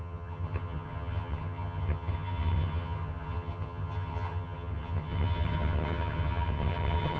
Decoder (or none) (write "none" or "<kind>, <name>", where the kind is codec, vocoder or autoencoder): vocoder, HiFi-GAN